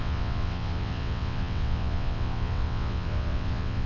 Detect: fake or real fake